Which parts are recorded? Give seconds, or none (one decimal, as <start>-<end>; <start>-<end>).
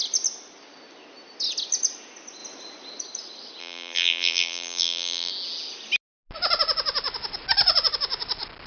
0.0-3.6; 5.3-8.7